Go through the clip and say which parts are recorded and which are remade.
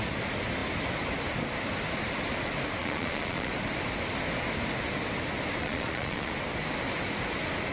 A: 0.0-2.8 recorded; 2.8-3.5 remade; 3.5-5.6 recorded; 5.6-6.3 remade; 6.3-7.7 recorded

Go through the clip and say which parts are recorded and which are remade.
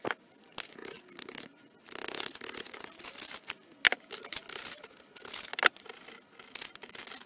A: 0.0-7.3 recorded